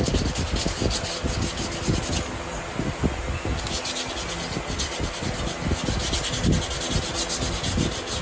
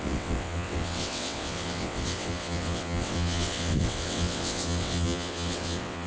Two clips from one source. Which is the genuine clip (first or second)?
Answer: first